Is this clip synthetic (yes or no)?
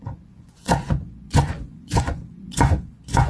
yes